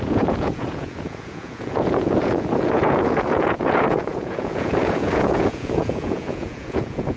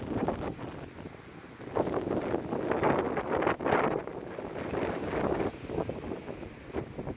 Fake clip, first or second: first